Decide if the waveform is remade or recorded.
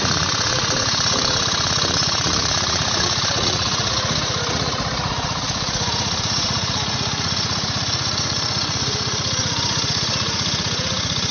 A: remade